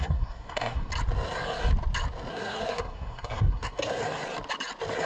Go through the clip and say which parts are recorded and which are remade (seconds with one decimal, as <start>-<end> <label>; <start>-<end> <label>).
0.0-0.9 remade; 0.9-2.3 recorded; 2.3-4.0 remade; 4.0-5.1 recorded